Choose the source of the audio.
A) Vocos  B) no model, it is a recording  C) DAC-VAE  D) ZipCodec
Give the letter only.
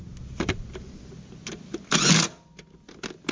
B